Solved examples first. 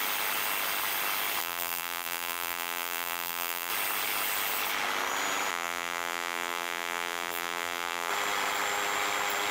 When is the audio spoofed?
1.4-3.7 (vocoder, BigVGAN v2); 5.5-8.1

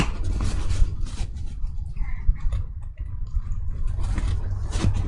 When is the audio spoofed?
0.8-3.9 (vocoder, BigVGAN v2)